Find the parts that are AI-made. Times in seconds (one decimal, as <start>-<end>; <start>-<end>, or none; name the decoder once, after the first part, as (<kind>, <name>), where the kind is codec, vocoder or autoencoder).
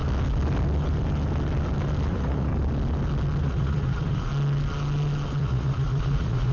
2.1-2.5 (vocoder, Vocos); 3.4-4.3; 5.4-6.5